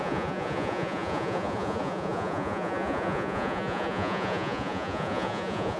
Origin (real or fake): fake